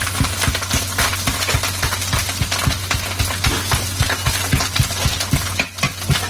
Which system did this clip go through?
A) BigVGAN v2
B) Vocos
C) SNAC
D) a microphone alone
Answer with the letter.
D